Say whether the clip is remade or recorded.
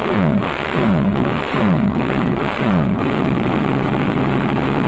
remade